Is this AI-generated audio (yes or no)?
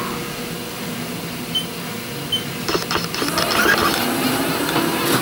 no